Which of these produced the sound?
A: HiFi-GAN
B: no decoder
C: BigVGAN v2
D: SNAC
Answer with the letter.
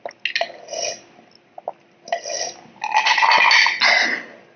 B